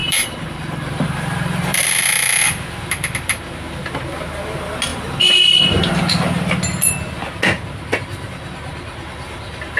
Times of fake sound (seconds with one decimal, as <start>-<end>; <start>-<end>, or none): 0.0-3.4